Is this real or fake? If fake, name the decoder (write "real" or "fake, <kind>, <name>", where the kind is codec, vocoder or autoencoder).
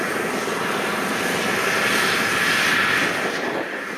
real